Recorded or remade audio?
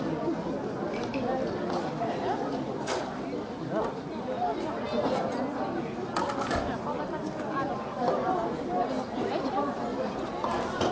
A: recorded